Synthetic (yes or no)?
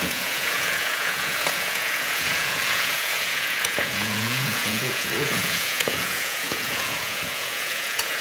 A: yes